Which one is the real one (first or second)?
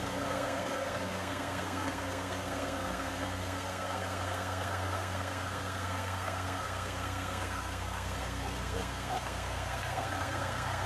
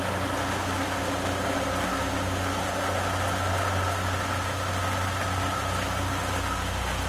second